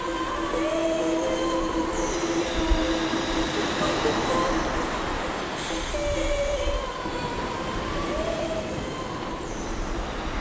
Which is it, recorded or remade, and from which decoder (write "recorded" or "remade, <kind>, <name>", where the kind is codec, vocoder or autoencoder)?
recorded